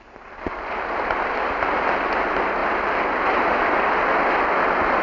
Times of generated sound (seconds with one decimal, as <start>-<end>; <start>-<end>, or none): none